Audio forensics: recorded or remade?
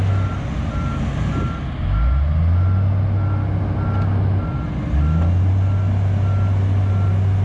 recorded